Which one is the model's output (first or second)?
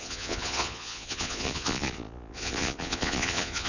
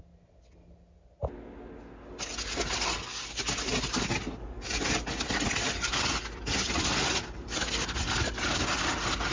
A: first